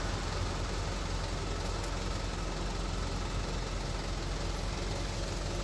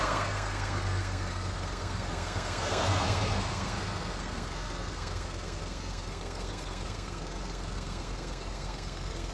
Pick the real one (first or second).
first